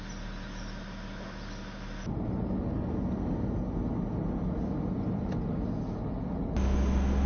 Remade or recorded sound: recorded